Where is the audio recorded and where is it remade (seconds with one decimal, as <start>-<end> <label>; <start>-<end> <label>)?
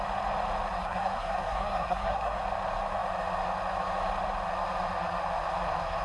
0.0-0.8 recorded; 0.8-2.4 remade; 2.4-6.0 recorded